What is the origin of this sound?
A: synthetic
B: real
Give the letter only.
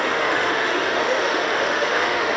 A